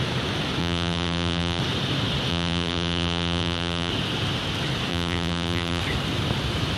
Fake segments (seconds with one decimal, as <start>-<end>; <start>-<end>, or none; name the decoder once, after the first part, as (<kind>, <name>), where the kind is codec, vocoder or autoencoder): 0.6-1.6 (vocoder, BigVGAN v2); 2.3-3.9; 4.9-5.8